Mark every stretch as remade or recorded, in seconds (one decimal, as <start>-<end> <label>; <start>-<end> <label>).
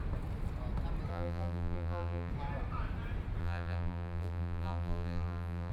0.0-1.1 recorded; 1.1-2.3 remade; 2.3-3.4 recorded; 3.4-5.7 remade